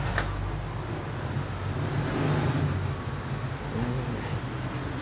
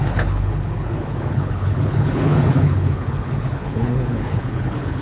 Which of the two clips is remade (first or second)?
second